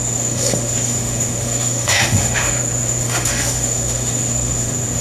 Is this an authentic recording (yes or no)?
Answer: no